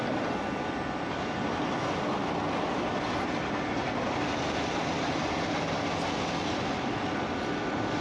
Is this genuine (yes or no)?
yes